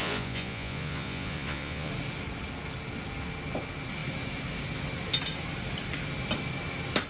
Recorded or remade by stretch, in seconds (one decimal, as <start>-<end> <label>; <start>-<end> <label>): 0.0-1.9 remade; 1.9-7.1 recorded